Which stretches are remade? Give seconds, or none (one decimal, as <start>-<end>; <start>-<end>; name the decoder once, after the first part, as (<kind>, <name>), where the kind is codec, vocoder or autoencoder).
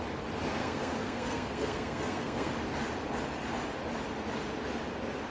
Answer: 0.6-2.5 (codec, SNAC)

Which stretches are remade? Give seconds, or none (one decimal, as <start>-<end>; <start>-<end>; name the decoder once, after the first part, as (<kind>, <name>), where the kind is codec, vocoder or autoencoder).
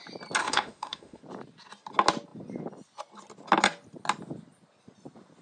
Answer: 0.4-1.2 (autoencoder, DAC-VAE)